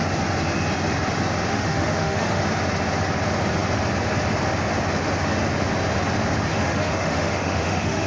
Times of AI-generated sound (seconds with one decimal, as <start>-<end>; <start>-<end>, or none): 1.5-2.4; 6.5-8.1